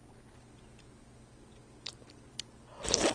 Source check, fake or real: real